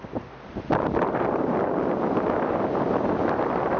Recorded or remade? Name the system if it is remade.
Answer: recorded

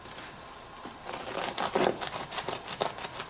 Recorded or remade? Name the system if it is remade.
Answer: recorded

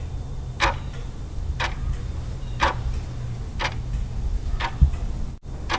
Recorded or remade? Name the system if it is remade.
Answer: recorded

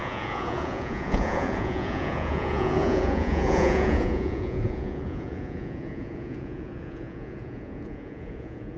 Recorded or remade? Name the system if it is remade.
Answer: remade, vocoder, Vocos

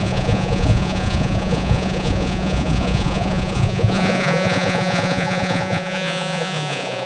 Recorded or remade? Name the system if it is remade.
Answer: remade, vocoder, Vocos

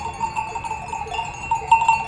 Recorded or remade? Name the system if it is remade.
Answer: recorded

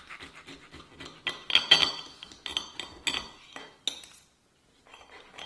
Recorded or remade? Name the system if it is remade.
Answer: recorded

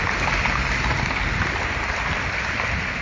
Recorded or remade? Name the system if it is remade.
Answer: recorded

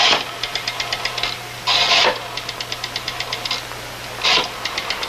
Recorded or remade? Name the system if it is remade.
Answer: recorded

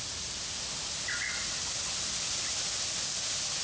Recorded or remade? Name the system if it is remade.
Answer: recorded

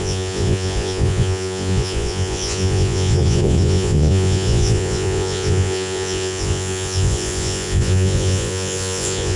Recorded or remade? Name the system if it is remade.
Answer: remade, vocoder, Vocos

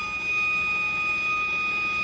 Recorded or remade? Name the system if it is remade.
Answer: recorded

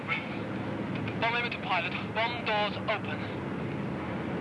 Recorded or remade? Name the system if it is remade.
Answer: recorded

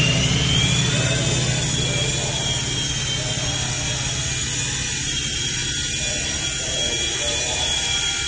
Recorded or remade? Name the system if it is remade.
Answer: recorded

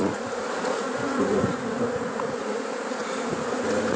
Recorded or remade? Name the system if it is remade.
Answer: remade, vocoder, Vocos